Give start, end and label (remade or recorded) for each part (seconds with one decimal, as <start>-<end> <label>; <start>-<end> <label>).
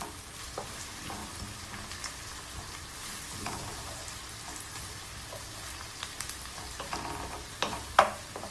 0.0-1.2 remade; 1.2-2.9 recorded; 2.9-8.5 remade